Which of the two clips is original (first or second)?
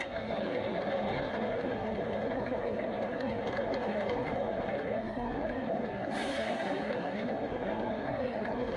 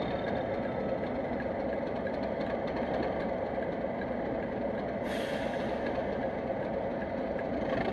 second